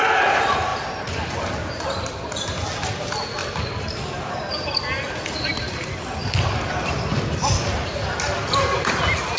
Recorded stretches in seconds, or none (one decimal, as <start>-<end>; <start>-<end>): none